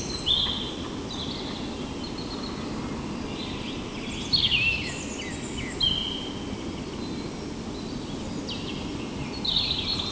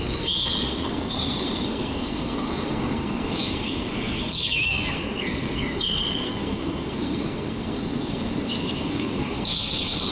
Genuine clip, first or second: first